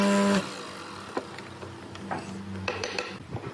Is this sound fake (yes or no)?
no